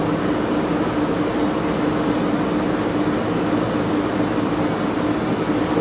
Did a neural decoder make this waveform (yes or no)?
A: no